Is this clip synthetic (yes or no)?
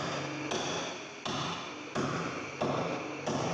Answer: no